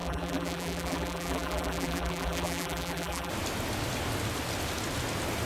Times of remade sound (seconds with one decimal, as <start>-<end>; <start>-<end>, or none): 0.0-3.3